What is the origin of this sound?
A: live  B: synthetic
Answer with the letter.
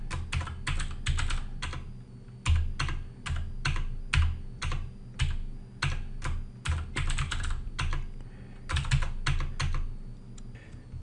A